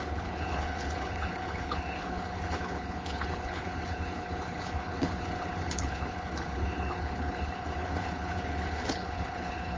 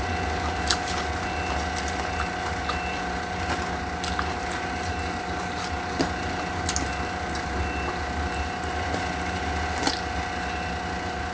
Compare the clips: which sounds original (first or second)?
second